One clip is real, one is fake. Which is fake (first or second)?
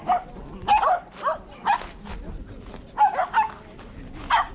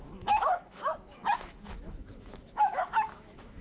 second